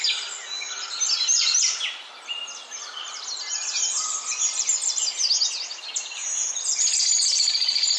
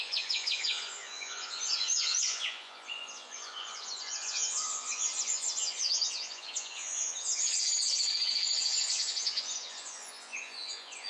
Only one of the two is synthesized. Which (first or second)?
second